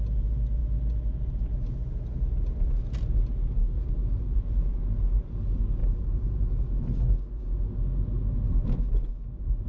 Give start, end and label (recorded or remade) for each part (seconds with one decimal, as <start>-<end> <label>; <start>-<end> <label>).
0.0-3.6 recorded; 3.6-4.4 remade; 4.4-5.8 recorded; 5.8-6.7 remade; 6.7-9.7 recorded